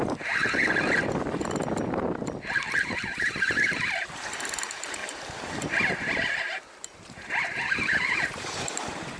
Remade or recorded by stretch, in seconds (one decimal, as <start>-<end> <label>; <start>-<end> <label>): 0.0-0.4 remade; 0.4-2.8 recorded; 2.8-9.2 remade